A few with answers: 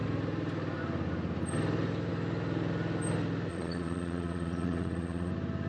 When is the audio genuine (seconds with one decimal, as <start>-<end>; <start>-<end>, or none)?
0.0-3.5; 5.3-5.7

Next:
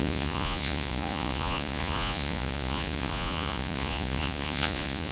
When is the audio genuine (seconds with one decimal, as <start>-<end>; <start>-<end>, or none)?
none

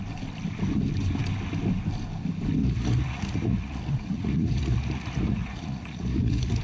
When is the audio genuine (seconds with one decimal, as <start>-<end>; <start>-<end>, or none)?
0.0-2.6

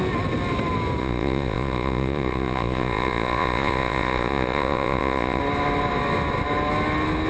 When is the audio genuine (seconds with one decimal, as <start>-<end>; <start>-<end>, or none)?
0.0-1.0; 5.4-7.3

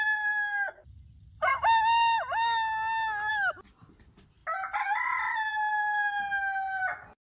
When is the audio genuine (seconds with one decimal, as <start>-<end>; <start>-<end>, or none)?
0.0-7.2

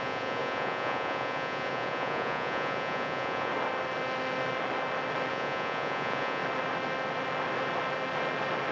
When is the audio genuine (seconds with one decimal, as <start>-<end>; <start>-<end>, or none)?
3.5-5.3; 6.4-8.7